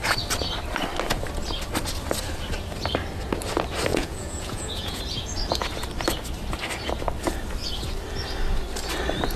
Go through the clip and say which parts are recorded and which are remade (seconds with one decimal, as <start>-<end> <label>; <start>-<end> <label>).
0.0-3.9 recorded; 3.9-5.0 remade; 5.0-9.4 recorded